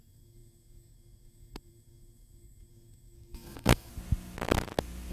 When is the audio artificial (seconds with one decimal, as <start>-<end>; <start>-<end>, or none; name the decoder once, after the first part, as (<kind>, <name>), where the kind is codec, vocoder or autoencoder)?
0.0-3.9 (codec, SNAC)